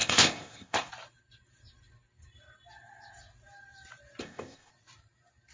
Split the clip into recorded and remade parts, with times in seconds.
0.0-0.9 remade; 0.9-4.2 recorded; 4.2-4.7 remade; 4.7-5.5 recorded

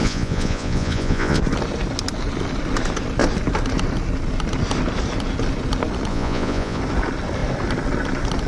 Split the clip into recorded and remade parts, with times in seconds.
0.0-1.4 remade; 1.4-6.1 recorded; 6.1-6.8 remade; 6.8-8.5 recorded

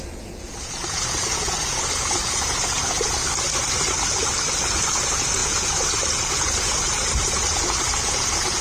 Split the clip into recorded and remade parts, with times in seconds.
0.0-3.2 remade; 3.2-4.7 recorded; 4.7-8.6 remade